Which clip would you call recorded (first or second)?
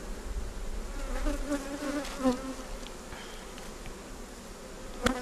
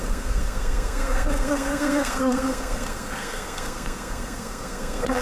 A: first